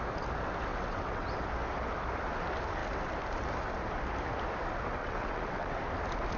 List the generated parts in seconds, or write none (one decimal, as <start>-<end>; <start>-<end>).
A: 0.7-1.3; 5.0-5.8